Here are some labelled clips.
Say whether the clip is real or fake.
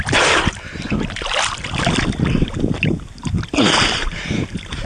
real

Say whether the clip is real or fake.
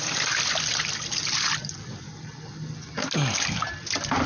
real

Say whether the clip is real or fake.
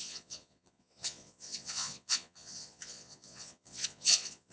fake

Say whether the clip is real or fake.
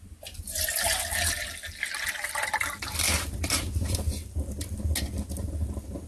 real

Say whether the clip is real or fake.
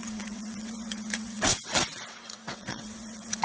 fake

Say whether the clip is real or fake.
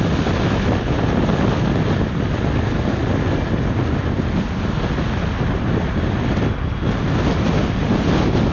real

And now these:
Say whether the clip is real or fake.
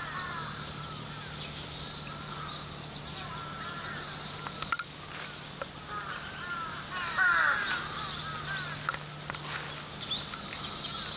real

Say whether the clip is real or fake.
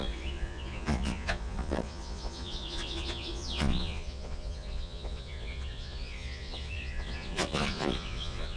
fake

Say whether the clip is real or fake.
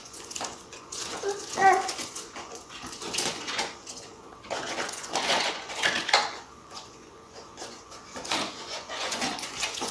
fake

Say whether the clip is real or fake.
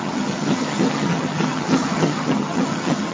fake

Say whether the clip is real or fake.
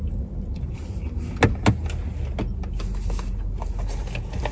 real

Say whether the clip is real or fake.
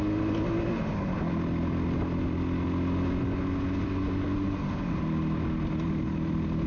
real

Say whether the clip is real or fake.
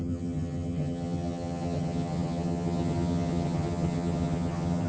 fake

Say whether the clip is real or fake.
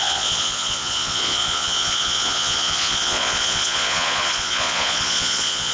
fake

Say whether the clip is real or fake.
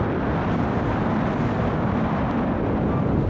real